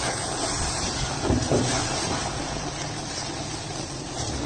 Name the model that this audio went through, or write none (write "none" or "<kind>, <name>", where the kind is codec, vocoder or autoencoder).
none